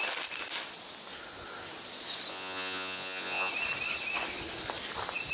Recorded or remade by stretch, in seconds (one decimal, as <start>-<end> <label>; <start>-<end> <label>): 0.0-2.3 recorded; 2.3-3.5 remade; 3.5-5.3 recorded